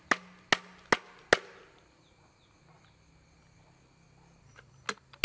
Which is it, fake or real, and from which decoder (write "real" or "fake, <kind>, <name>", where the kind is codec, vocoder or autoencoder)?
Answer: real